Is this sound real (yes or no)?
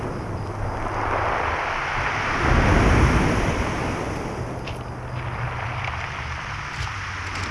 yes